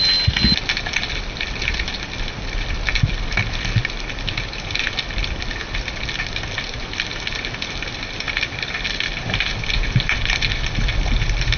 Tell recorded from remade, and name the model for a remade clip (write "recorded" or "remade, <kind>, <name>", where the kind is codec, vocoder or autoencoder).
recorded